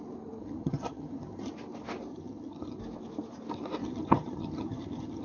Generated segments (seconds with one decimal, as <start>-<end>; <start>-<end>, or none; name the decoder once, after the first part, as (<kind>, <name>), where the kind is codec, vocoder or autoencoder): 0.4-1.5 (vocoder, HiFi-GAN); 2.1-2.8; 3.8-5.2